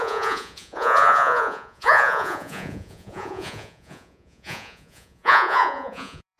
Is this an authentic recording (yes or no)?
no